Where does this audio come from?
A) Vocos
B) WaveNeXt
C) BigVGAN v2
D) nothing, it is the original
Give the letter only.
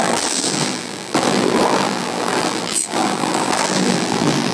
C